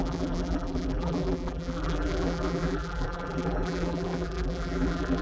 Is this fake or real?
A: fake